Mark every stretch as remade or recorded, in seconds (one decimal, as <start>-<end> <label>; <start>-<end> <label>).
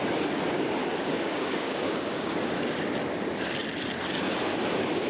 0.0-0.8 recorded; 0.8-2.5 remade; 2.5-5.1 recorded